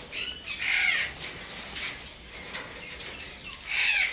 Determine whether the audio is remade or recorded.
recorded